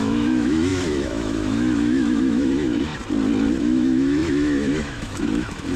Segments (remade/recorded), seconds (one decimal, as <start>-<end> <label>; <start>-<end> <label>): 0.0-2.9 remade; 2.9-3.6 recorded; 3.6-5.8 remade